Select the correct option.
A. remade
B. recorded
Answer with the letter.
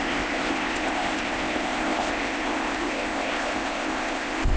A